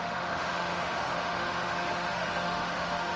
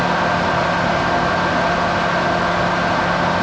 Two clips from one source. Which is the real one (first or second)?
second